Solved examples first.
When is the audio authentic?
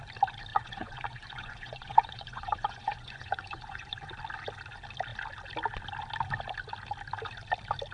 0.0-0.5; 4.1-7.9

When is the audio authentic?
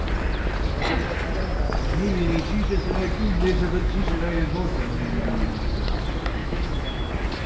0.0-3.8; 4.9-6.4; 7.1-7.5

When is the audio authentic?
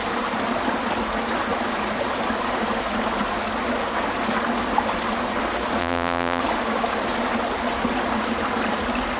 0.0-5.8; 6.4-9.2